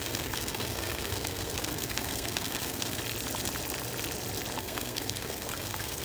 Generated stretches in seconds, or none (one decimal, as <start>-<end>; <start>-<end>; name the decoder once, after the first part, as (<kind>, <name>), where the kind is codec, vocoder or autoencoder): 0.0-3.0 (codec, SNAC); 4.6-6.0

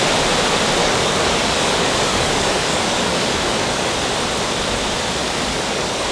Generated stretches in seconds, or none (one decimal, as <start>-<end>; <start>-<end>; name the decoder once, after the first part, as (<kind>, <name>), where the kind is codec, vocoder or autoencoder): 0.8-3.9 (codec, DAC); 5.2-6.1

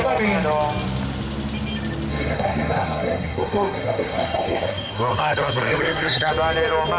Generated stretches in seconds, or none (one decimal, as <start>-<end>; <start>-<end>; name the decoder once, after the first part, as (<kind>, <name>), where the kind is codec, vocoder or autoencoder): 2.1-6.3 (codec, SNAC)

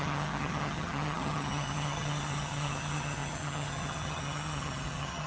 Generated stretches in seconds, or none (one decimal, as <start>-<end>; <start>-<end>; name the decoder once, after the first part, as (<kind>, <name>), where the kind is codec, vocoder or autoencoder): 0.0-5.3 (vocoder, HiFi-GAN)

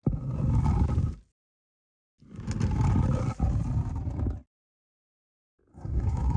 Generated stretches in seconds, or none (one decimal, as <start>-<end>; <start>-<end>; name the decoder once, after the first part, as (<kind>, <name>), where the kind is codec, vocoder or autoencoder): 5.7-6.4 (codec, SNAC)

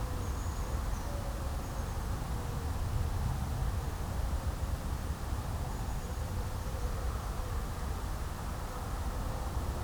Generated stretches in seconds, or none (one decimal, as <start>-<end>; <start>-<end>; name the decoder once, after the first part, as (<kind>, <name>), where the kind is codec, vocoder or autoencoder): 3.6-6.7 (vocoder, BigVGAN v2)

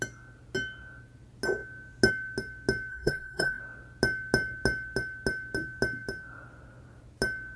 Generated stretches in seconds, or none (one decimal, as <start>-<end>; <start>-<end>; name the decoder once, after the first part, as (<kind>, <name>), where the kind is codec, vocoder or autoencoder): 2.9-3.6 (codec, SNAC)